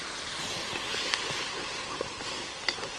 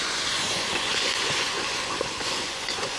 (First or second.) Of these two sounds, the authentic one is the first